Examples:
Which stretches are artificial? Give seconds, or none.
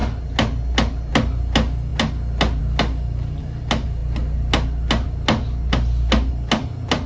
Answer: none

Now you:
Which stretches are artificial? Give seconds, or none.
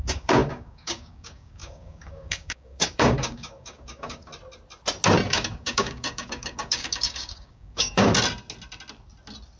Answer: 0.0-4.3 (codec, DAC); 5.3-8.1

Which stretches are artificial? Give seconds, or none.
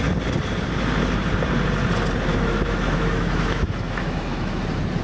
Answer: 2.3-4.6 (autoencoder, DAC-VAE)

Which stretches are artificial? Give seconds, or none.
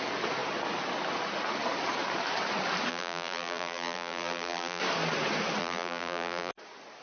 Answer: 2.9-4.8 (vocoder, BigVGAN v2); 5.6-6.5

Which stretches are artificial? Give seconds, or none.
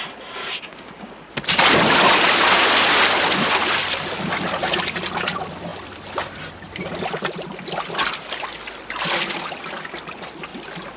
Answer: 0.4-1.1 (codec, DAC)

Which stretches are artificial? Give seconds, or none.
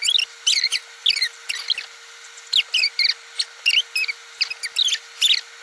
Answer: none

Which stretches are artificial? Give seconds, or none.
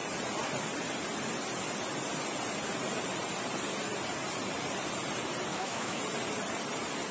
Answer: 5.5-6.0 (autoencoder, DAC-VAE)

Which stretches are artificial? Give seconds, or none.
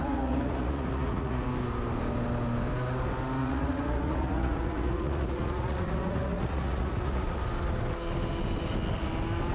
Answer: 0.0-1.5 (vocoder, Vocos); 3.4-7.4